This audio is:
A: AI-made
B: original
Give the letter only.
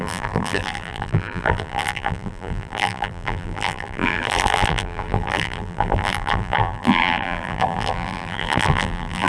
A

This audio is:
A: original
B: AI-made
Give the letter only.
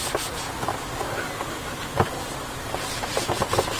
A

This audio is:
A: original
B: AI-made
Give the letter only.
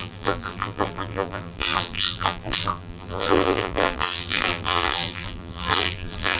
B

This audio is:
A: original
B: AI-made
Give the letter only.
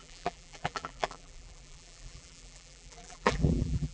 B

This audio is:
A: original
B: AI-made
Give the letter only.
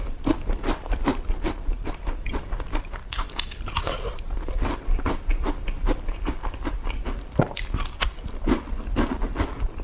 A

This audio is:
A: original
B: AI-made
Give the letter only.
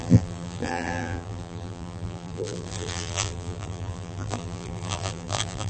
B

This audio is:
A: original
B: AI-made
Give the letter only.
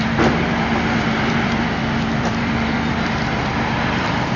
B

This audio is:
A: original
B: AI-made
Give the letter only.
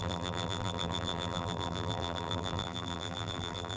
B